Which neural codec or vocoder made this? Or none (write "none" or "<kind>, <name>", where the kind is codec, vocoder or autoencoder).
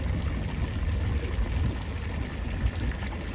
none